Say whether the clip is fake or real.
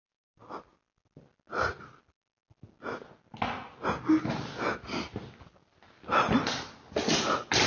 real